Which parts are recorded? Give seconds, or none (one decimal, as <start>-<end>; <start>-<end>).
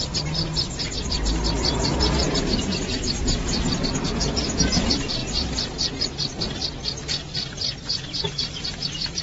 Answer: 0.0-9.2